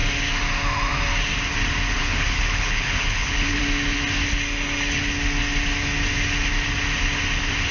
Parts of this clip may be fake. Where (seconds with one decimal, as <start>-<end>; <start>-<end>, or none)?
2.0-3.6